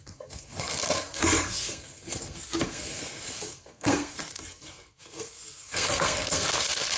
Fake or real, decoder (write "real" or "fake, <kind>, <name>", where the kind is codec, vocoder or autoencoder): fake, codec, SNAC